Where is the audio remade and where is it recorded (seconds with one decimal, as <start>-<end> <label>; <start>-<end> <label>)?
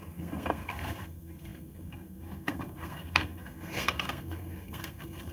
0.0-5.3 remade